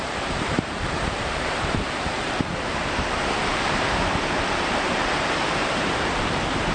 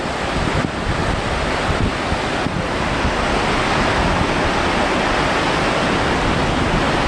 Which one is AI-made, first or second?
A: first